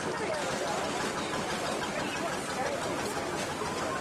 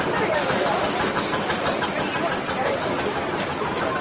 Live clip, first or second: first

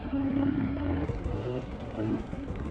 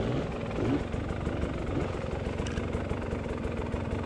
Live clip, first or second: second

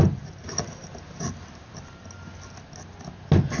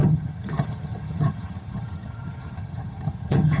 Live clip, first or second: first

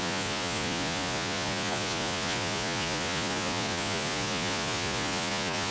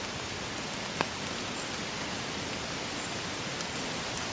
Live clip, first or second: second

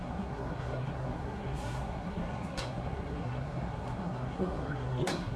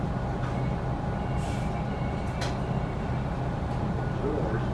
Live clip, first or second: second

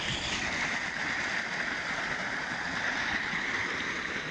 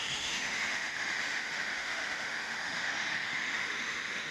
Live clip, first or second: first